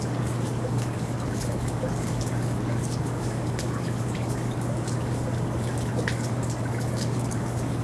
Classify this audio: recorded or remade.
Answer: remade